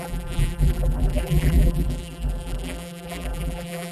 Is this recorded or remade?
remade